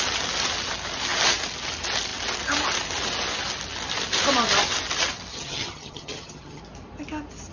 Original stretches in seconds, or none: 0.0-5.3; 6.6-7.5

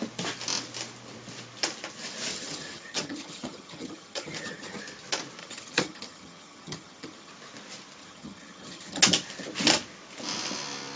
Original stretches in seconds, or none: 0.0-2.3; 4.8-5.4; 7.3-8.0; 9.0-11.0